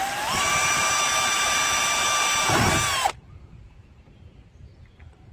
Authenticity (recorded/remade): remade